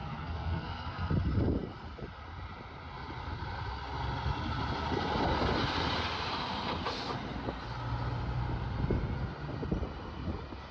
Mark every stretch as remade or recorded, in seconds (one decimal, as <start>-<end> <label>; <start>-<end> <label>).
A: 0.0-1.1 remade; 1.1-10.7 recorded